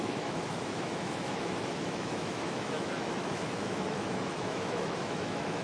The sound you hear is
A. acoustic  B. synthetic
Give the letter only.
B